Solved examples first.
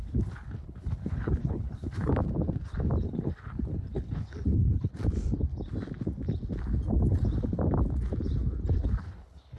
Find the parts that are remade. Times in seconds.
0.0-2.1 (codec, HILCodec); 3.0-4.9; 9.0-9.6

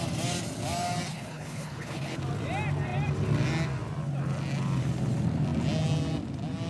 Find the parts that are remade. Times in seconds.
1.1-2.2 (codec, HILCodec)

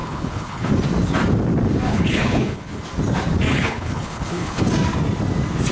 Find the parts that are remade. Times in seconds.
0.0-0.7 (codec, HILCodec); 1.9-2.8; 3.5-4.6

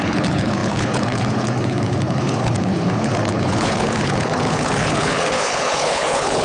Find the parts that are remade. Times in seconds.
0.0-6.4 (codec, HILCodec)

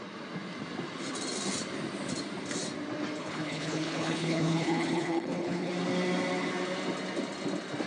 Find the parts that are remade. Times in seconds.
3.2-5.7 (codec, HILCodec)

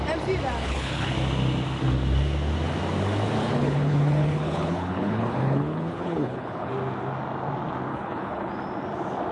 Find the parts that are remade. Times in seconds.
0.6-1.1 (codec, HILCodec); 3.4-6.7; 7.9-8.5